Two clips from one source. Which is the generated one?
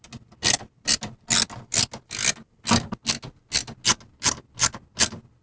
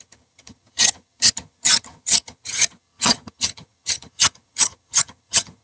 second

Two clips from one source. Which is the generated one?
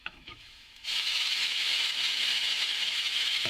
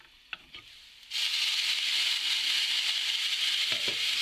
first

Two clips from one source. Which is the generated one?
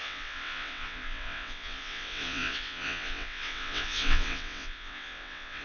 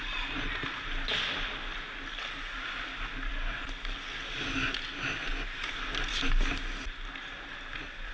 first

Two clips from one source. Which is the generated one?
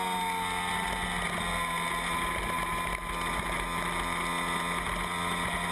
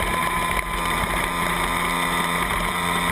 second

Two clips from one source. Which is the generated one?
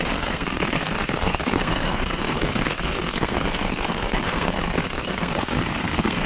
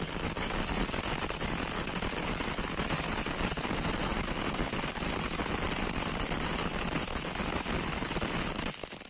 first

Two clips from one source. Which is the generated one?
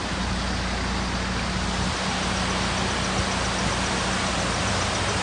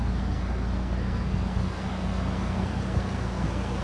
second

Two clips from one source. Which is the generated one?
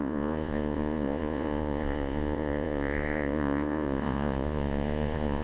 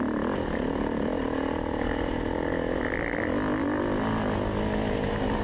first